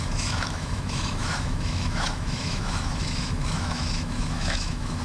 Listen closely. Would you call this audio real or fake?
fake